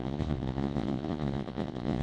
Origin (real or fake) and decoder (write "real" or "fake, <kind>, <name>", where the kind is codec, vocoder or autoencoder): fake, vocoder, Vocos